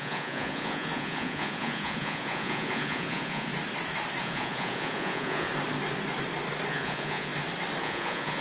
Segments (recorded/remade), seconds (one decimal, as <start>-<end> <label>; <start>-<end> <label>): 0.0-3.5 remade; 3.5-4.2 recorded; 4.2-5.5 remade; 5.5-6.7 recorded; 6.7-7.3 remade; 7.3-7.8 recorded; 7.8-8.4 remade